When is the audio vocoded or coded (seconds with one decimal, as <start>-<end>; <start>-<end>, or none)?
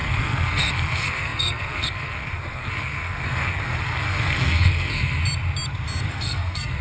0.0-5.2; 6.1-6.8